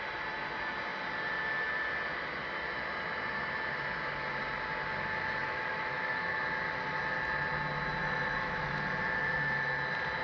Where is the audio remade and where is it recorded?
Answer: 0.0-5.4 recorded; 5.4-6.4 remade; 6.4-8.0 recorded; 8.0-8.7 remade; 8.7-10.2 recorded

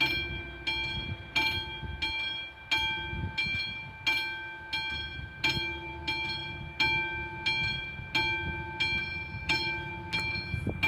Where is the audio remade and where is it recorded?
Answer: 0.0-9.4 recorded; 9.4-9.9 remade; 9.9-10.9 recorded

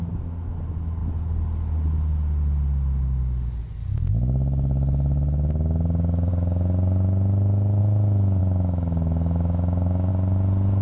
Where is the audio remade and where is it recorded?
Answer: 0.0-8.4 recorded; 8.4-10.1 remade; 10.1-10.8 recorded